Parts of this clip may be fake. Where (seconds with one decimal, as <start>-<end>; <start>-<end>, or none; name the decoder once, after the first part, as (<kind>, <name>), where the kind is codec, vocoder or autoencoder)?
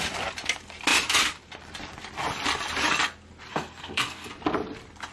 3.5-4.3 (codec, SNAC)